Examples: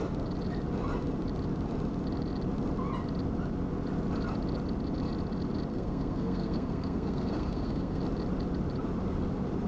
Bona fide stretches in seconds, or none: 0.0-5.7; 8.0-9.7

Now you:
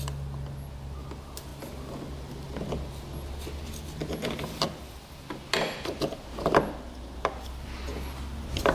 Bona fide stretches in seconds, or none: 0.0-8.7

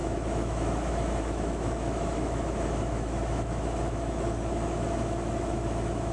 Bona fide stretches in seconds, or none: none

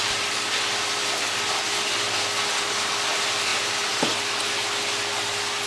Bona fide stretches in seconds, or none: 0.0-5.7

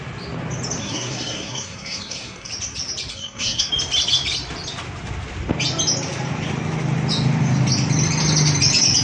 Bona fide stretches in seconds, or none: 0.0-0.8; 2.5-3.1; 3.7-9.0

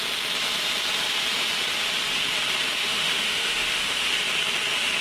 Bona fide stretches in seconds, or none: 0.0-2.8; 4.1-5.0

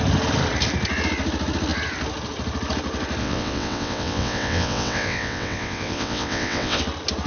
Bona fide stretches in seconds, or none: 0.0-3.2; 6.8-7.3

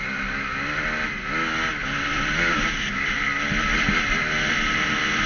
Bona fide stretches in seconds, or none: 0.0-5.3